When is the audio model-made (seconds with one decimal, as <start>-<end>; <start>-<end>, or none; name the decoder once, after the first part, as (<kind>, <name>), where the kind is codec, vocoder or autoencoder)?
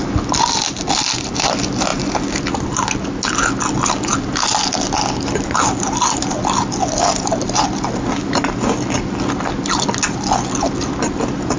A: none